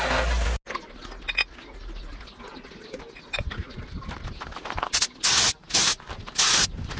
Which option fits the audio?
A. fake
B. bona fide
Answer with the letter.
B